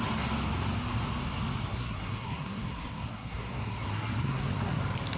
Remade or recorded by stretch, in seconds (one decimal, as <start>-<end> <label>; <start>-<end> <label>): 0.0-1.7 recorded; 1.7-4.8 remade; 4.8-5.2 recorded